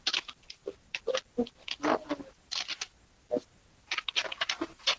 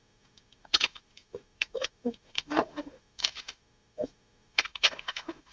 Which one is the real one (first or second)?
first